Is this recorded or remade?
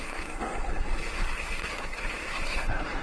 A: remade